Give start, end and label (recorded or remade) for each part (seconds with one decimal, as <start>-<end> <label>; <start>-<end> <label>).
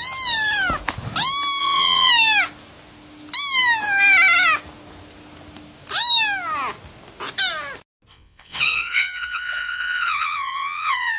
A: 0.0-1.6 recorded; 1.6-2.1 remade; 2.1-8.1 recorded; 8.1-11.2 remade